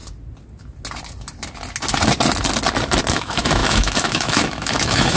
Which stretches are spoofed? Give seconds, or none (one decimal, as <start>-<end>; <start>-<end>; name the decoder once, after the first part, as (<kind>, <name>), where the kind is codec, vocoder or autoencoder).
3.1-5.2 (autoencoder, DAC-VAE)